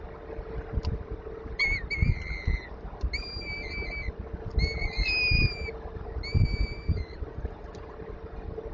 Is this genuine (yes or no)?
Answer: yes